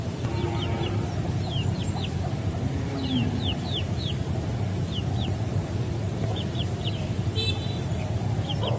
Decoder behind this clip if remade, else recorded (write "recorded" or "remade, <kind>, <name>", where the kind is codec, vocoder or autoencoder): remade, vocoder, BigVGAN v2